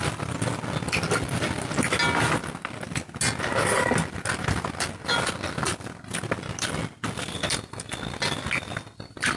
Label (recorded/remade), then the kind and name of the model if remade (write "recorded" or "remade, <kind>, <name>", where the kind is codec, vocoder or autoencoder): recorded